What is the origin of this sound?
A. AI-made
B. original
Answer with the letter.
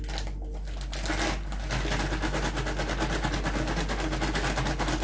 B